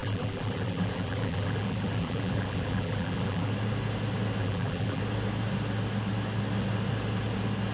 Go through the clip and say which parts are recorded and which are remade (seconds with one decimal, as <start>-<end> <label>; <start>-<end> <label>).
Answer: 0.0-3.5 remade; 3.5-4.4 recorded; 4.4-5.0 remade; 5.0-7.7 recorded

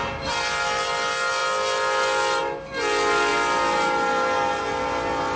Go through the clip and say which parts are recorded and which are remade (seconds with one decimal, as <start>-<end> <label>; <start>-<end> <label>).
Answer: 0.0-5.4 recorded